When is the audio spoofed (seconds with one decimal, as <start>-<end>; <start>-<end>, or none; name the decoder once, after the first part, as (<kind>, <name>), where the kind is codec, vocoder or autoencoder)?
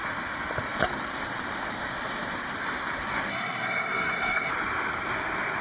3.3-4.5 (codec, SNAC)